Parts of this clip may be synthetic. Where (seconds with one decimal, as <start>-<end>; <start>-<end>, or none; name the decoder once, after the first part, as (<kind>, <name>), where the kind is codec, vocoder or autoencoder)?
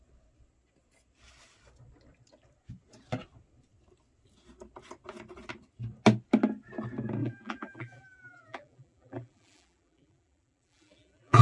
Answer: 7.2-11.4 (vocoder, BigVGAN v2)